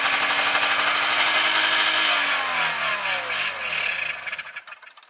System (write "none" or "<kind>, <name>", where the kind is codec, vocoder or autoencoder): none